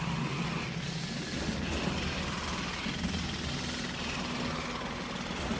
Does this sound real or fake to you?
real